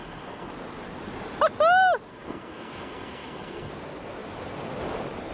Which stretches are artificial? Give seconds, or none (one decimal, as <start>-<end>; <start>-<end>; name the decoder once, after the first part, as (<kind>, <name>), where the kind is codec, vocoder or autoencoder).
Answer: 0.0-0.5 (codec, SNAC); 2.1-3.7